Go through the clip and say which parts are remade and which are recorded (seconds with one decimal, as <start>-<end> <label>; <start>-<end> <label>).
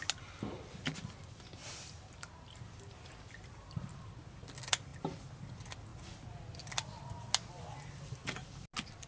0.0-9.1 recorded